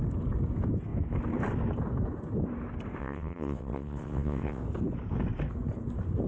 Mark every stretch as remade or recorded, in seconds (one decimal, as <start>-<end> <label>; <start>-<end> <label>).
0.0-3.0 recorded; 3.0-4.6 remade; 4.6-6.3 recorded